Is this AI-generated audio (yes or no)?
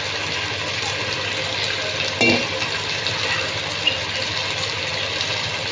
no